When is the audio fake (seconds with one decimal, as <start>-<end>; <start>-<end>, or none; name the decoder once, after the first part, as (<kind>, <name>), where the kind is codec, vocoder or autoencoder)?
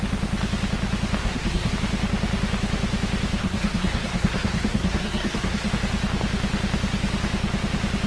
1.2-1.7 (codec, SNAC); 3.4-5.7